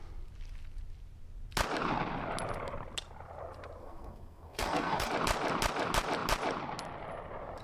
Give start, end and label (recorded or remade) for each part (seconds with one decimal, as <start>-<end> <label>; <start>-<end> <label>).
0.0-3.8 recorded; 3.8-5.1 remade; 5.1-7.6 recorded